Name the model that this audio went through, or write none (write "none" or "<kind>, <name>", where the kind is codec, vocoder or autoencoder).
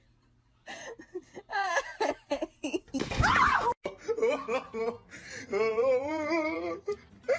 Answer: none